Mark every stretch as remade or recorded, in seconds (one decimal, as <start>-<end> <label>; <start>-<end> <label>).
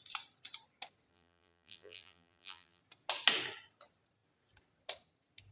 0.0-1.1 recorded; 1.1-2.8 remade; 2.8-5.5 recorded